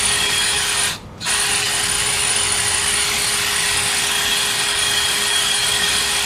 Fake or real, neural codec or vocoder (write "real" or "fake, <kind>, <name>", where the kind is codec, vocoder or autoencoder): fake, codec, DAC